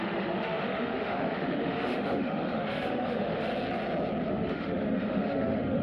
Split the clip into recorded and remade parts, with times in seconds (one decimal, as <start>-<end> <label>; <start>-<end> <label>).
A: 0.0-3.5 remade; 3.5-4.3 recorded; 4.3-5.8 remade